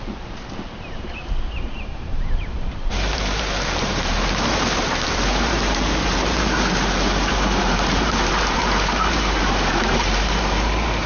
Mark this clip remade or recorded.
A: remade